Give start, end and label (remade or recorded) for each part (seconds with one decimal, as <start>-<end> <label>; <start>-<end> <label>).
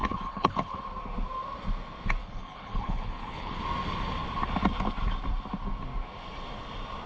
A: 0.0-0.8 remade; 0.8-2.2 recorded; 2.2-3.6 remade; 3.6-7.1 recorded